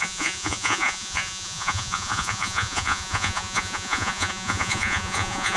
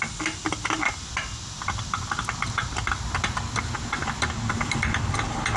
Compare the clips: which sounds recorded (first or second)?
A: second